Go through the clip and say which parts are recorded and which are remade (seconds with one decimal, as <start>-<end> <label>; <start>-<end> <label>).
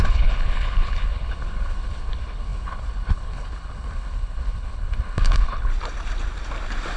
0.0-5.7 remade; 5.7-7.0 recorded